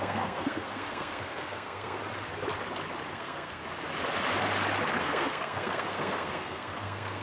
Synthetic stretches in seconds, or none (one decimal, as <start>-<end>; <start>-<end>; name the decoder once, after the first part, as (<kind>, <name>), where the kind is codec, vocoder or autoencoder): 0.0-2.0 (codec, SNAC); 3.1-3.6; 5.0-7.2